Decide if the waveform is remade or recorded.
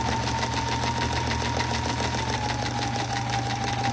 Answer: recorded